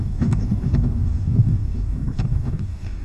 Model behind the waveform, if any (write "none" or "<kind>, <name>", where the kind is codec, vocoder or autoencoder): codec, DAC